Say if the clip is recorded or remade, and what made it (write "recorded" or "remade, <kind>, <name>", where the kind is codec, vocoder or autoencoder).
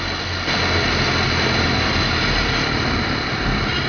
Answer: recorded